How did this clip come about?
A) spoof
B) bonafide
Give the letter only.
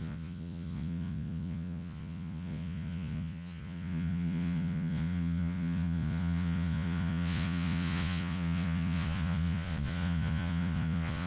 A